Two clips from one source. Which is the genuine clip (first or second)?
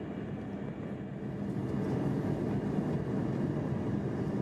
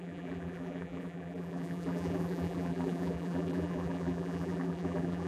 first